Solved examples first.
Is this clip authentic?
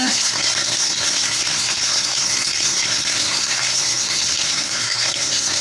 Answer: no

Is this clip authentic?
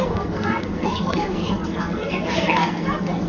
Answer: no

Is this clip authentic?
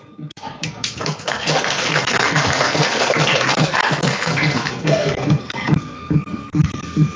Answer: no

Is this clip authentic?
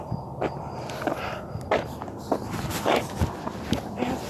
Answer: yes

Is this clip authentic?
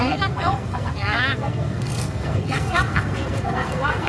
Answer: no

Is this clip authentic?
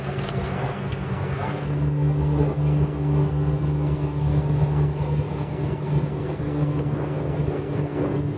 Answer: no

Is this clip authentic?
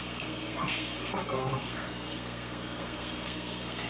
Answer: no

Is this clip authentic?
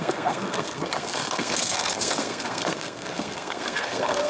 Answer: no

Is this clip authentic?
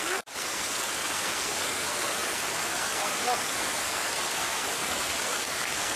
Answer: no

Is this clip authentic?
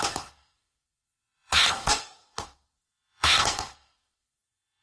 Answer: no